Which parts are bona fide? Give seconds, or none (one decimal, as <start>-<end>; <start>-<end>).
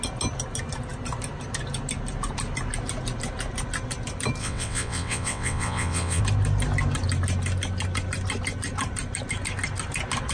0.0-4.4; 6.2-10.3